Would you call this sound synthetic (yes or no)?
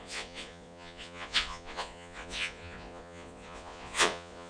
yes